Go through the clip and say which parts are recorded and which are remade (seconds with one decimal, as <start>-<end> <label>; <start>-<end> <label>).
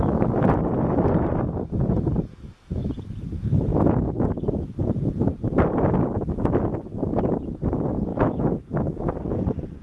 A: 0.0-2.3 recorded; 2.3-2.9 remade; 2.9-3.7 recorded; 3.7-4.4 remade; 4.4-8.1 recorded; 8.1-9.4 remade; 9.4-9.8 recorded